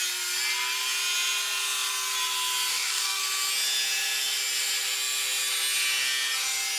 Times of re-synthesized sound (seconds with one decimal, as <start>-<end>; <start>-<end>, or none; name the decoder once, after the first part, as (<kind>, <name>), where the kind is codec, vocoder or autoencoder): 2.7-3.2 (codec, DAC)